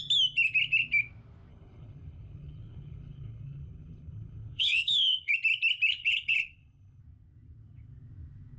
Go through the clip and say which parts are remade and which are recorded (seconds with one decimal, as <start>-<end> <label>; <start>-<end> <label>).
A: 0.0-1.5 recorded; 1.5-5.3 remade; 5.3-6.0 recorded; 6.0-7.0 remade; 7.0-8.6 recorded